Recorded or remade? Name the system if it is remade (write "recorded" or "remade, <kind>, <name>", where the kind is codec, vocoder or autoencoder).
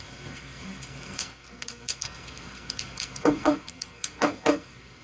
remade, codec, SNAC